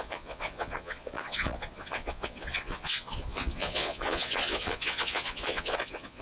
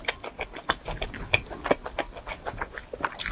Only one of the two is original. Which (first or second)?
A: second